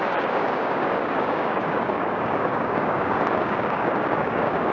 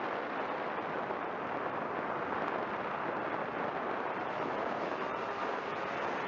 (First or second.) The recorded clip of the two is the second